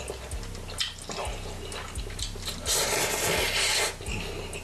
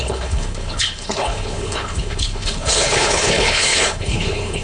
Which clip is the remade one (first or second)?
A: second